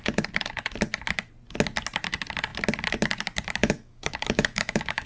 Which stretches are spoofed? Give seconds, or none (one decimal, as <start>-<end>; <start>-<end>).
3.6-5.1